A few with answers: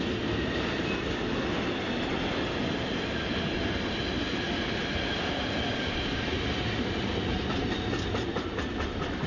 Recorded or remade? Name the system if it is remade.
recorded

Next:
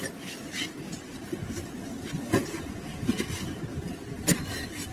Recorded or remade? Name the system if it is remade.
recorded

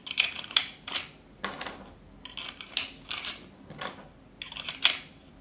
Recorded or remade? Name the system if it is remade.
recorded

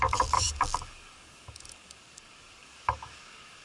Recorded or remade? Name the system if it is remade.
remade, codec, DAC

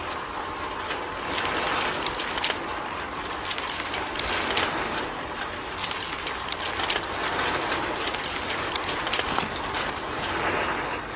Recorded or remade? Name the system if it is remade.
recorded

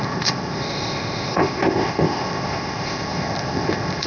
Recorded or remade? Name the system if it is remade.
remade, codec, ZipCodec